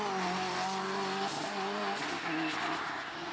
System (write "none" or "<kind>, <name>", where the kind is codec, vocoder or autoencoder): none